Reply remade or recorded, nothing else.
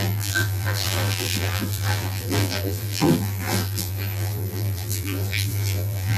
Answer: remade